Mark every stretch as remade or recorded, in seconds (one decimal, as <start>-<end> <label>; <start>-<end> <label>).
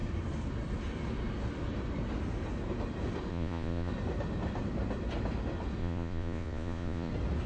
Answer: 0.0-3.3 recorded; 3.3-3.9 remade; 3.9-5.8 recorded; 5.8-7.1 remade; 7.1-7.5 recorded